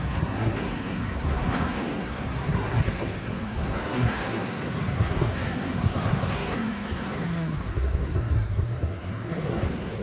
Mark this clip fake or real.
fake